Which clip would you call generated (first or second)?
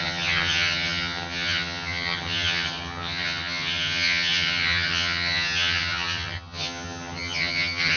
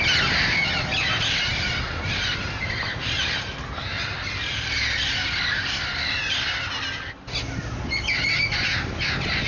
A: first